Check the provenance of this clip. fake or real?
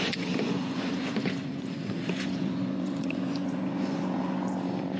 fake